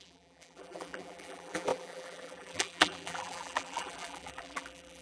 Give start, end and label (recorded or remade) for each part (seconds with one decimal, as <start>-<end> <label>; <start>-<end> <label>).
0.0-5.0 remade